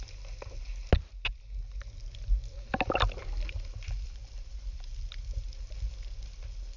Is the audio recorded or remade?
recorded